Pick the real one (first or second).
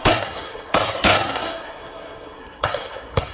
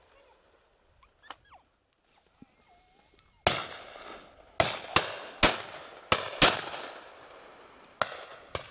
second